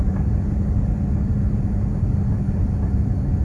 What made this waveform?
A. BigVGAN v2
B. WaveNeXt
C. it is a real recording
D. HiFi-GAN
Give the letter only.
A